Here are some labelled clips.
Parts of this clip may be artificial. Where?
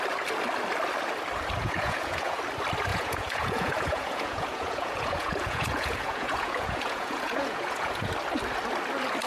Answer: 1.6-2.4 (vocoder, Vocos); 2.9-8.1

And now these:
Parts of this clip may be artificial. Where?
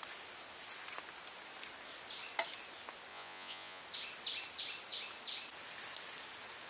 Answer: 3.1-3.8 (vocoder, Vocos)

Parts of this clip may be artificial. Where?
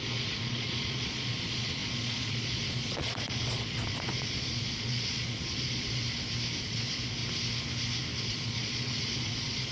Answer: 0.0-6.0 (vocoder, Vocos); 6.6-7.2; 8.2-9.7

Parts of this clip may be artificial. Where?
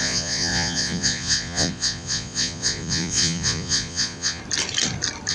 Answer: 0.0-4.4 (vocoder, Vocos)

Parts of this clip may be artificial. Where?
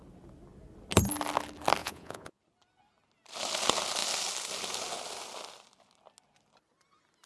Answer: 1.8-2.4 (vocoder, Vocos)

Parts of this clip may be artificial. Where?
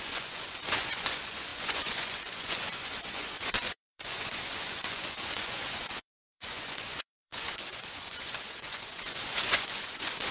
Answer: 0.0-10.3 (vocoder, Vocos)